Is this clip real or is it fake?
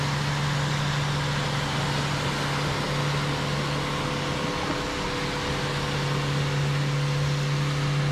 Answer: real